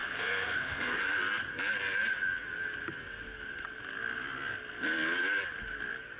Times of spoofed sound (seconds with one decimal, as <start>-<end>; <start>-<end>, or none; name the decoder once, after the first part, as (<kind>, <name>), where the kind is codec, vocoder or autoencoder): 0.0-1.0 (codec, SNAC)

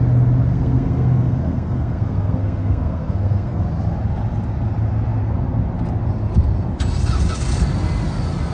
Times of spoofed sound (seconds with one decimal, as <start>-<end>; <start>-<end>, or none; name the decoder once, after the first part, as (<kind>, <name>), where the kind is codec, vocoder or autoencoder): 0.5-3.6 (codec, SNAC)

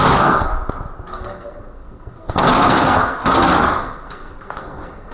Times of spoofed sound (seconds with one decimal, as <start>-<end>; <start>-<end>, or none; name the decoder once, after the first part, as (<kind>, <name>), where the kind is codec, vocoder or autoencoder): 0.0-0.5 (codec, SNAC); 1.1-5.1

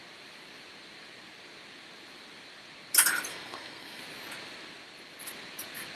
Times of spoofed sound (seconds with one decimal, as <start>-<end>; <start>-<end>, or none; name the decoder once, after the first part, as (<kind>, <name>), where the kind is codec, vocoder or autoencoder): 3.3-4.0 (codec, SNAC)

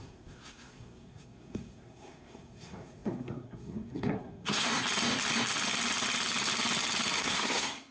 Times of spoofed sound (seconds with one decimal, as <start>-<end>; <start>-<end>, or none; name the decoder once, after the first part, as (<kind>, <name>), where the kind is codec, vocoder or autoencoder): 0.0-4.7 (codec, SNAC); 7.2-7.9

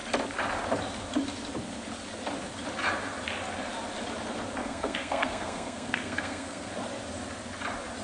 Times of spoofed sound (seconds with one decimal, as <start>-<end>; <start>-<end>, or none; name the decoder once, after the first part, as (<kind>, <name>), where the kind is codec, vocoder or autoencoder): 4.6-6.7 (codec, SNAC)

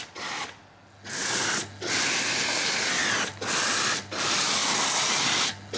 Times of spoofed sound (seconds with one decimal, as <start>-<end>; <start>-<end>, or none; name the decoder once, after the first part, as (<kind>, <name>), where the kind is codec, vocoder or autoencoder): none

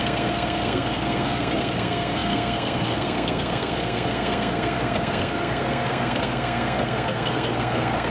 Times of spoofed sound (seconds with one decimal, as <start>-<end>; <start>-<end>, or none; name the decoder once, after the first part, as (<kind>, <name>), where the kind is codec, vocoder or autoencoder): 0.0-8.1 (codec, SNAC)